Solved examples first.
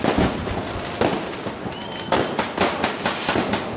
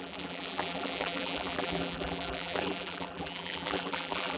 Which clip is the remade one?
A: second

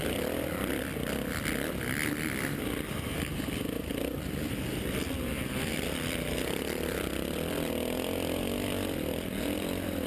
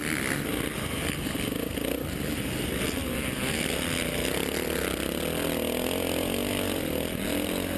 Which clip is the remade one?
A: first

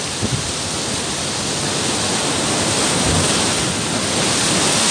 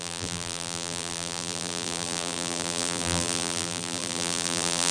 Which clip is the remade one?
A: second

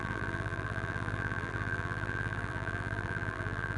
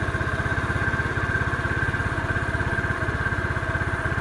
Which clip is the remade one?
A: first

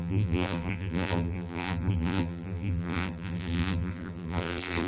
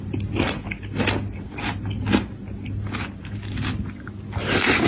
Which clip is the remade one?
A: first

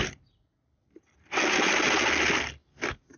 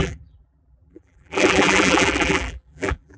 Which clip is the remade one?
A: second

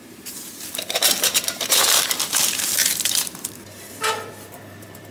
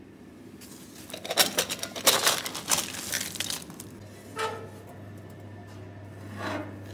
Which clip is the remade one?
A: first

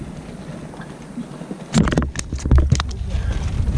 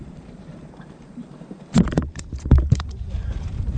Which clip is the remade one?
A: second